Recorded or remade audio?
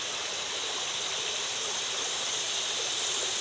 recorded